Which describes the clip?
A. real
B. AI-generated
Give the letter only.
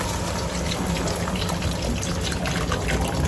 A